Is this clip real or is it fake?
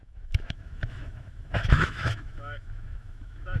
fake